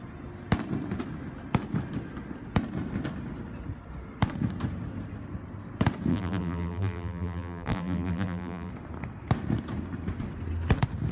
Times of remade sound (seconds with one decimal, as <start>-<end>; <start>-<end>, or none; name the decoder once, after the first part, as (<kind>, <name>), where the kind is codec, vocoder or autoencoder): 6.1-8.7 (vocoder, BigVGAN v2)